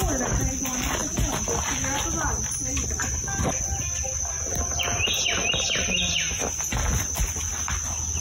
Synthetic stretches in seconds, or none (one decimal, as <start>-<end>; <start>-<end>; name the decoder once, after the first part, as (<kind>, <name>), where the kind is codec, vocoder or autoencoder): none